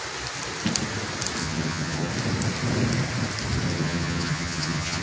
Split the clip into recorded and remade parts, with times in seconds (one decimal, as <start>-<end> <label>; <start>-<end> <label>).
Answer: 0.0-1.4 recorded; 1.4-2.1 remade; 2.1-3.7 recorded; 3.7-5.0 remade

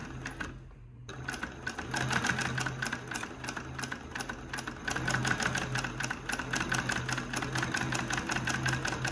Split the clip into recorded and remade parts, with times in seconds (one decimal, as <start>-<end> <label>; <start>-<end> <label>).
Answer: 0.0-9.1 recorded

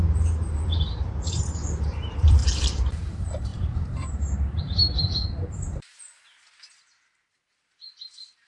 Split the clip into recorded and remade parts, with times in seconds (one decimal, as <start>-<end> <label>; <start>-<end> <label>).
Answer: 0.0-5.2 remade; 5.2-7.3 recorded; 7.3-8.5 remade

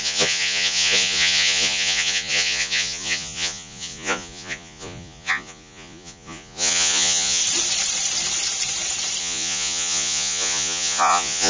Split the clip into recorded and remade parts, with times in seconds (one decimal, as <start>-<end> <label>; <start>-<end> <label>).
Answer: 0.0-7.4 remade; 7.4-9.2 recorded; 9.2-11.5 remade

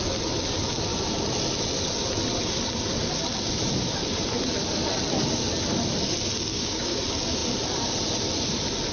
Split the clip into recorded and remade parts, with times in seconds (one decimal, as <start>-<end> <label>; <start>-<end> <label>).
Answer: 0.0-6.5 recorded; 6.5-7.0 remade; 7.0-8.9 recorded

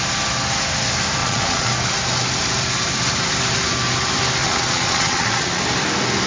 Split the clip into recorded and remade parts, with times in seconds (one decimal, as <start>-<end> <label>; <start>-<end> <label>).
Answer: 0.0-1.2 recorded; 1.2-1.7 remade; 1.7-4.4 recorded; 4.4-5.6 remade; 5.6-6.3 recorded

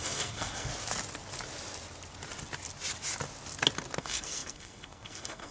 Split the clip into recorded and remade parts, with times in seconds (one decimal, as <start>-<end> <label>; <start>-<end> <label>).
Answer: 0.0-0.7 remade; 0.7-4.0 recorded; 4.0-5.5 remade